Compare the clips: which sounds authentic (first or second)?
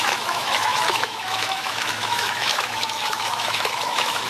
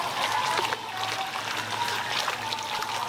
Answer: second